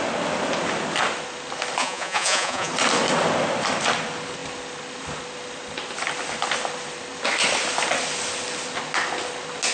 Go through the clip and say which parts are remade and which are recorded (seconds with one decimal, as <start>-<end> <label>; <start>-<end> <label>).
0.0-1.8 recorded; 1.8-2.7 remade; 2.7-9.7 recorded

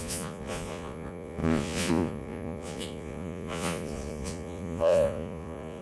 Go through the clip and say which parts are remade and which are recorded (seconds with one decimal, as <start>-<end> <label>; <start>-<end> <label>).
0.0-5.8 remade

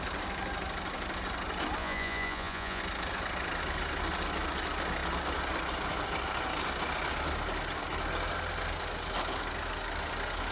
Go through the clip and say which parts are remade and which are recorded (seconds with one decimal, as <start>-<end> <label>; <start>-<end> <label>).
0.0-1.8 recorded; 1.8-2.8 remade; 2.8-10.5 recorded

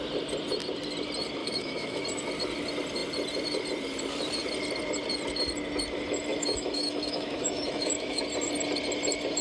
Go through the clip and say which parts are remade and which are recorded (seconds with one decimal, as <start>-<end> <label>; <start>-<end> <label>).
0.0-1.4 recorded; 1.4-2.0 remade; 2.0-6.3 recorded; 6.3-8.2 remade; 8.2-9.4 recorded

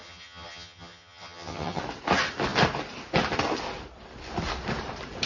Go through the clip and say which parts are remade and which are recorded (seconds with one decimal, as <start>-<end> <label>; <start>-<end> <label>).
0.0-1.8 remade; 1.8-5.3 recorded